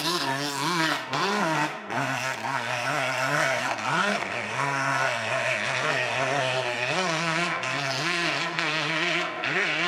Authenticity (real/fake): fake